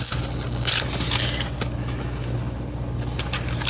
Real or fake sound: real